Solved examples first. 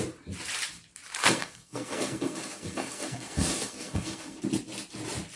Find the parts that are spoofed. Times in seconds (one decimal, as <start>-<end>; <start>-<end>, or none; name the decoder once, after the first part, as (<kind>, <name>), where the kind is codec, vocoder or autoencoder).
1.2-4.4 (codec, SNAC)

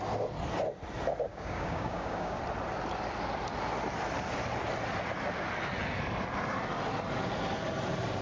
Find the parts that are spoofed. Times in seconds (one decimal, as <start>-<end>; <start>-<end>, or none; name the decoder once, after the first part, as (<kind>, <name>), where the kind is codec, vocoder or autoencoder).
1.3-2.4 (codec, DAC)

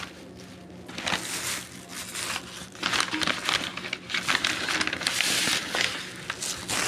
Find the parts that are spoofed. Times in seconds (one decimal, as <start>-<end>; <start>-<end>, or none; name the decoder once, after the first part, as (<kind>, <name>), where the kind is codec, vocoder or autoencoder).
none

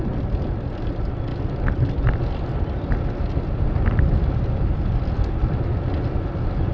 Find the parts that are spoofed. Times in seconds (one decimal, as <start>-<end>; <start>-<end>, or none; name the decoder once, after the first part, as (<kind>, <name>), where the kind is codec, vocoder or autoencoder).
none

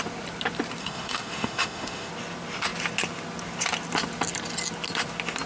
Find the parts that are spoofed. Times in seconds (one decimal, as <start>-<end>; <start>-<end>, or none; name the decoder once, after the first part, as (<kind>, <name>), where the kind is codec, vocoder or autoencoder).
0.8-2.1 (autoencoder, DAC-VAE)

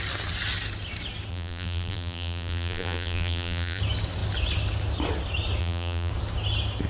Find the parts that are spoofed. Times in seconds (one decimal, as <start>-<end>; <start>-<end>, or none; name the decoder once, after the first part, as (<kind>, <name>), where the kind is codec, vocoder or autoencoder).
1.3-3.8 (vocoder, BigVGAN v2); 5.6-6.1